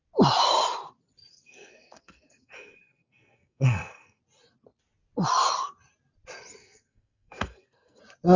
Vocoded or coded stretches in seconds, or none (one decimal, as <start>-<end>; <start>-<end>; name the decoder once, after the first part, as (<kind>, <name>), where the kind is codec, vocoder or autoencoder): 1.3-4.2 (codec, SNAC); 6.6-8.0